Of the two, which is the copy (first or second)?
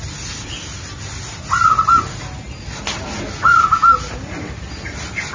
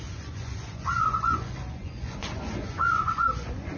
second